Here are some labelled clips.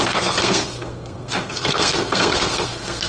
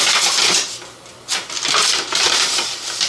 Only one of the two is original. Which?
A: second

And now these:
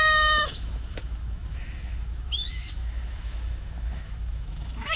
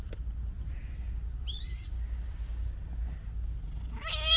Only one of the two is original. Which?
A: second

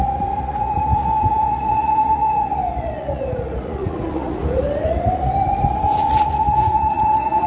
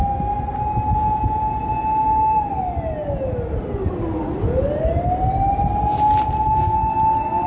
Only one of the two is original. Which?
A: second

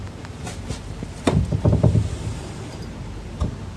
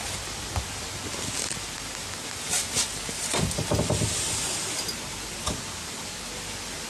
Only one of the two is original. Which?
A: second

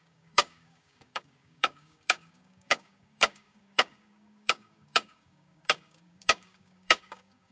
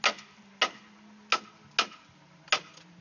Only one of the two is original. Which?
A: second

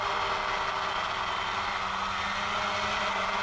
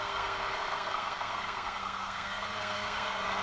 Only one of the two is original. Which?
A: first